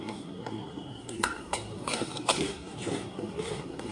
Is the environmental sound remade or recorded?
remade